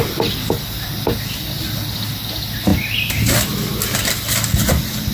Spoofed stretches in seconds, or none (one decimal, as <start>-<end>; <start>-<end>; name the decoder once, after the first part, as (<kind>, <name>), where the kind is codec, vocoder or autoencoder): 2.7-5.1 (vocoder, BigVGAN v2)